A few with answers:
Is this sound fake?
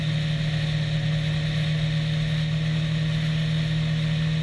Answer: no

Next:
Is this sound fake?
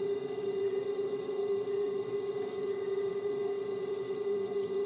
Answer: yes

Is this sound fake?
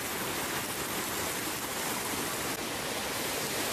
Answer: no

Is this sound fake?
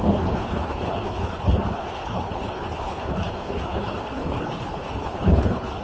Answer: yes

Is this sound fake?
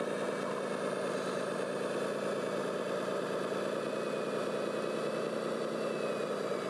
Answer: no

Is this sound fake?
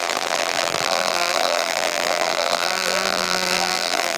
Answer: yes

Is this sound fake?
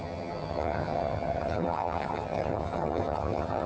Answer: yes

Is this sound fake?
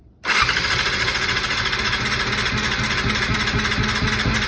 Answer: no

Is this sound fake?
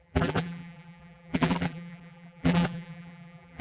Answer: yes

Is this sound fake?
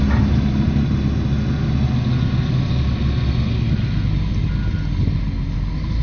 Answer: no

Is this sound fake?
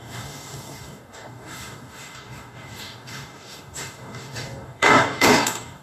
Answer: yes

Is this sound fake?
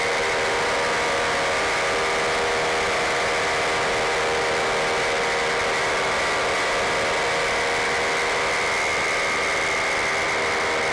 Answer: no